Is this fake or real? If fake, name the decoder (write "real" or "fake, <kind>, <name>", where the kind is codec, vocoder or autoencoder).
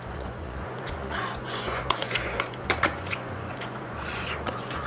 fake, vocoder, Vocos